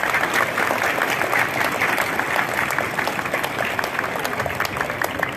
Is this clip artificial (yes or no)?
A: no